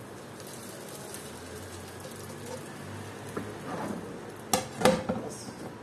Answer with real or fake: real